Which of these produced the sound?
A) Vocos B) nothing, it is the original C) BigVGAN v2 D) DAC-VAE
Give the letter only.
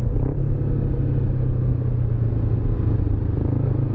B